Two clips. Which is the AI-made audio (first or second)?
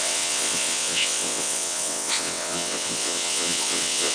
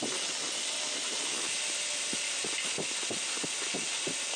first